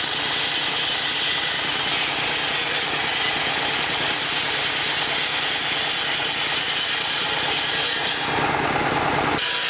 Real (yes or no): yes